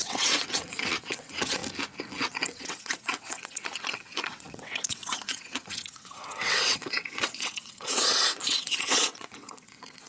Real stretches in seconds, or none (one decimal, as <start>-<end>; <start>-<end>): 1.6-2.1